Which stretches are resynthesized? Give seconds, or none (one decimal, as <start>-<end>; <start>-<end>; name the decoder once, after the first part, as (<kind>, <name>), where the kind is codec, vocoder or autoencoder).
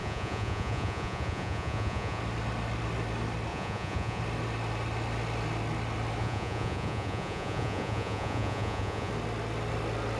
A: 0.0-2.2 (vocoder, Vocos); 3.5-4.2; 6.2-9.1